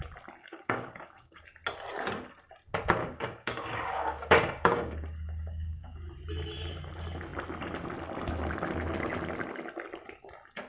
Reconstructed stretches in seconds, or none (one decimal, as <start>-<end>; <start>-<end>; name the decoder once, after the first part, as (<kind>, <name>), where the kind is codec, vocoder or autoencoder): 0.4-1.4 (codec, DAC); 3.0-6.1